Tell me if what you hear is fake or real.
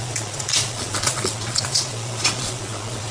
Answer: fake